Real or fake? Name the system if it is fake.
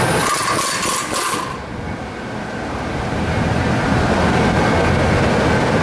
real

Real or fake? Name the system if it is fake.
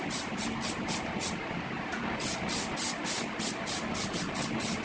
real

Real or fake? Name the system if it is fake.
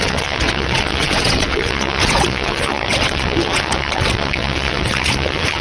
fake, vocoder, WaveNeXt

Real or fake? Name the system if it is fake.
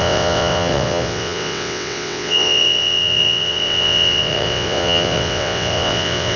fake, vocoder, WaveNeXt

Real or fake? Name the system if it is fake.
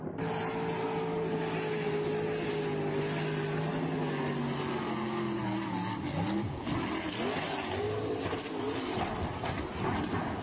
real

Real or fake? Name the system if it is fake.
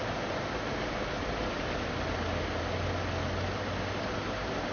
real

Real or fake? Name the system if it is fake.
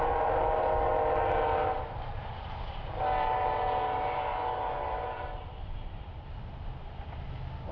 real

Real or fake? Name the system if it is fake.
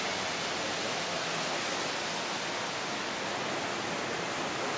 real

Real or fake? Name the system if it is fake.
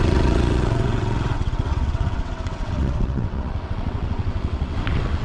fake, vocoder, WaveNeXt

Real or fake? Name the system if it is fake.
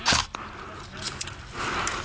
real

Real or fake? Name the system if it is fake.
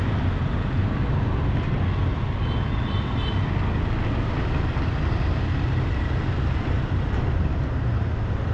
real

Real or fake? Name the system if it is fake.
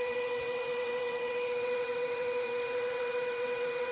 fake, vocoder, WaveNeXt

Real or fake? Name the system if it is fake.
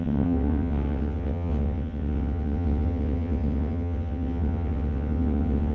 fake, vocoder, WaveNeXt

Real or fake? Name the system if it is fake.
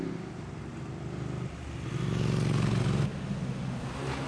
real